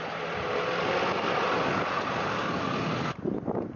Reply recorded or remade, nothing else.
recorded